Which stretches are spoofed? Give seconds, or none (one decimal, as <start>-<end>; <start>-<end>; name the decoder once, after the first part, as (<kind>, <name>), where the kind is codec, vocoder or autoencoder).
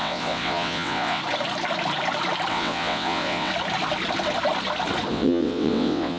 0.0-1.2 (vocoder, WaveNeXt); 2.5-3.5; 5.1-6.2